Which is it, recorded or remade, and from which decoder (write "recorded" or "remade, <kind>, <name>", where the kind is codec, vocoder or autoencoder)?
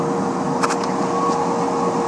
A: recorded